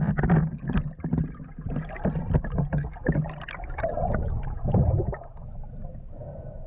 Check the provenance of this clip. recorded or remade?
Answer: recorded